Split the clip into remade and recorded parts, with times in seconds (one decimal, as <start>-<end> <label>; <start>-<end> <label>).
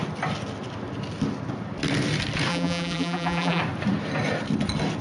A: 0.0-2.5 recorded; 2.5-3.6 remade; 3.6-5.0 recorded